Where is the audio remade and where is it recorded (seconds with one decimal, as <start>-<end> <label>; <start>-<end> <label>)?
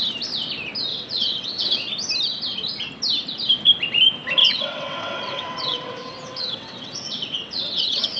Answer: 0.0-0.9 recorded; 0.9-1.9 remade; 1.9-4.4 recorded; 4.4-8.2 remade